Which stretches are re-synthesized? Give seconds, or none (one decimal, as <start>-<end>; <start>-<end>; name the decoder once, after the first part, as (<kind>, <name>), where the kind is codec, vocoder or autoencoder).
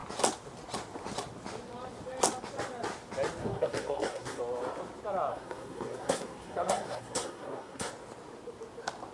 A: 3.4-4.4 (codec, SNAC); 5.3-7.9